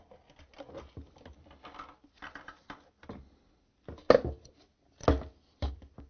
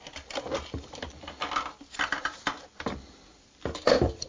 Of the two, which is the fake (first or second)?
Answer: second